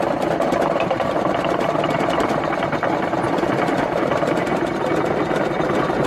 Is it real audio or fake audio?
real